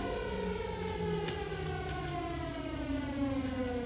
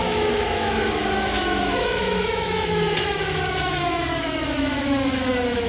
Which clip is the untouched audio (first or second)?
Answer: first